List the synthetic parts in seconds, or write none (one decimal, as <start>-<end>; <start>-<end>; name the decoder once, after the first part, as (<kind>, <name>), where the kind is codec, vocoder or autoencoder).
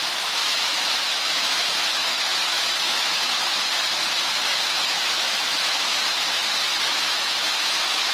0.0-8.1 (autoencoder, DAC-VAE)